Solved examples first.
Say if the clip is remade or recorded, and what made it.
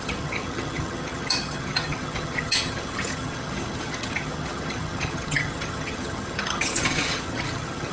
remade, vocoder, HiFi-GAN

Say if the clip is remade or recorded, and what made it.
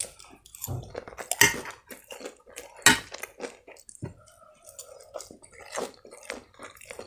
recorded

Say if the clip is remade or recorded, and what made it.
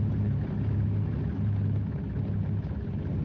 recorded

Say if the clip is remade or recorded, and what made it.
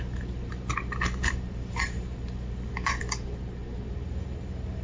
remade, vocoder, BigVGAN v2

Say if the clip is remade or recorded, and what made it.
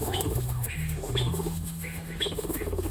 remade, autoencoder, DAC-VAE